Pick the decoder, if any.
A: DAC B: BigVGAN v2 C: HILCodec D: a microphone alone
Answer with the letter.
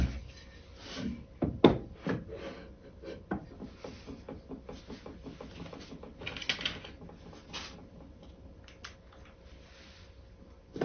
D